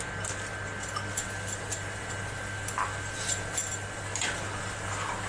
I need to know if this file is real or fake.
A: real